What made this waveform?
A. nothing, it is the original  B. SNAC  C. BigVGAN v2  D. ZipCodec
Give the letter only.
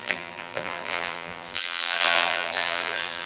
C